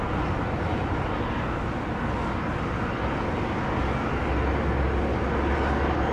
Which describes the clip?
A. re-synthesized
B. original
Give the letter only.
B